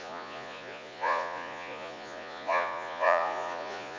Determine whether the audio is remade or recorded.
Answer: remade